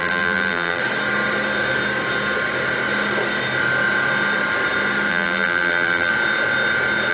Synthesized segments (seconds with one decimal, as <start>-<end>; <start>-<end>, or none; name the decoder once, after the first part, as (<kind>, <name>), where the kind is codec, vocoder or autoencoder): 0.0-0.8 (vocoder, BigVGAN v2); 5.1-6.1